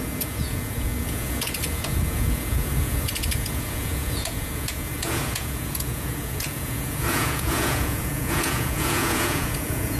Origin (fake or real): fake